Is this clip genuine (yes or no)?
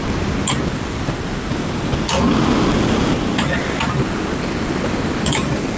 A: yes